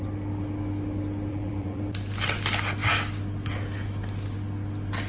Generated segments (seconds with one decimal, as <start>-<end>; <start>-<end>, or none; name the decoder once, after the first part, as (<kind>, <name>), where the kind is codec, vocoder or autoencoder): 1.3-1.8 (vocoder, BigVGAN v2)